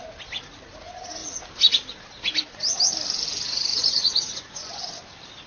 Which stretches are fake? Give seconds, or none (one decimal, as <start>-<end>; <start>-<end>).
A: 3.7-4.9